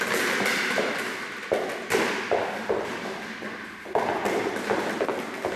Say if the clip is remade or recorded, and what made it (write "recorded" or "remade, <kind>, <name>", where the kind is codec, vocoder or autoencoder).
recorded